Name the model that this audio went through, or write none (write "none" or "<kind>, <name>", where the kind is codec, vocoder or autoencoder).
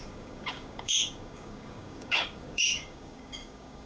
codec, DAC